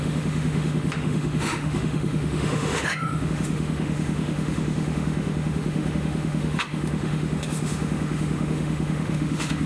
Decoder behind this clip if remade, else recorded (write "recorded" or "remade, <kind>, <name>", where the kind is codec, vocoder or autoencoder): remade, autoencoder, DAC-VAE